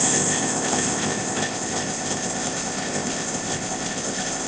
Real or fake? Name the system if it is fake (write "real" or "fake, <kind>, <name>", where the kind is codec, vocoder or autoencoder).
fake, codec, ZipCodec